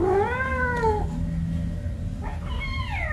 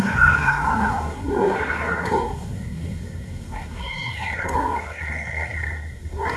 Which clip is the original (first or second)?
first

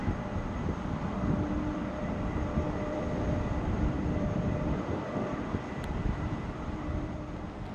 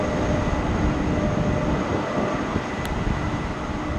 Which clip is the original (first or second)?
second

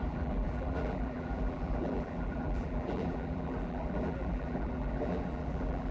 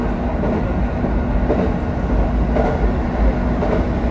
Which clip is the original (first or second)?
second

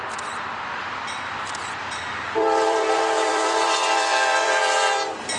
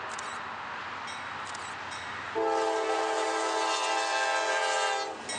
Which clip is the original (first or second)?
second